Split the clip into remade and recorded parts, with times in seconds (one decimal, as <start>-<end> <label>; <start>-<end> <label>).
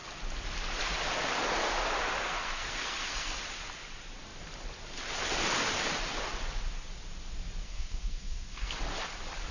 0.0-2.2 recorded; 2.2-3.4 remade; 3.4-7.6 recorded; 7.6-8.8 remade; 8.8-9.5 recorded